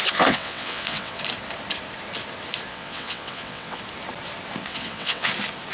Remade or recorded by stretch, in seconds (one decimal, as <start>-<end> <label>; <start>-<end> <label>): 0.0-1.2 remade; 1.2-2.7 recorded; 2.7-3.8 remade; 3.8-4.6 recorded; 4.6-5.3 remade; 5.3-5.7 recorded